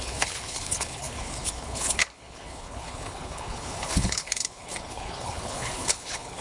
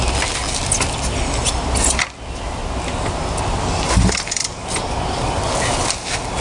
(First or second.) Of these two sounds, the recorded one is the second